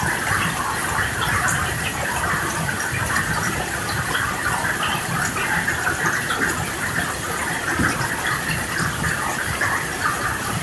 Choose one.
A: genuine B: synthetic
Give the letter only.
A